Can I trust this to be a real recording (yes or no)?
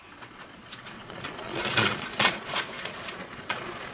no